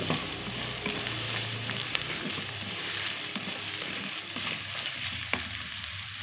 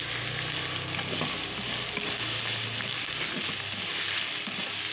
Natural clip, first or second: second